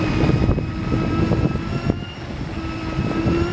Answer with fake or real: real